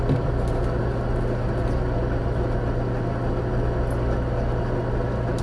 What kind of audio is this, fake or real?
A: real